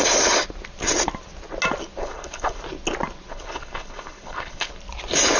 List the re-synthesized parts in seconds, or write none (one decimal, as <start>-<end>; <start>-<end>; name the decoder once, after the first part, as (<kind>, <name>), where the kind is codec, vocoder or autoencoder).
2.0-2.6 (codec, HILCodec); 3.3-4.7